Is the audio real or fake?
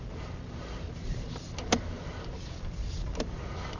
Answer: real